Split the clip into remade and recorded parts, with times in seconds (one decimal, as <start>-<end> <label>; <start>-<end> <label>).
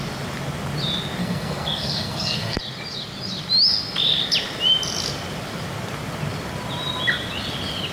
0.0-1.2 recorded; 1.2-2.6 remade; 2.6-7.9 recorded